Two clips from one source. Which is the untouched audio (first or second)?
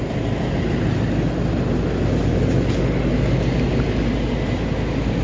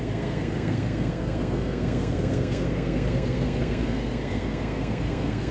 first